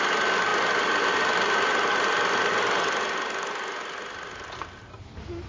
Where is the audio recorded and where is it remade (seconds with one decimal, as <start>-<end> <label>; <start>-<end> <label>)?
0.0-5.5 recorded